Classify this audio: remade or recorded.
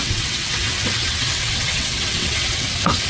remade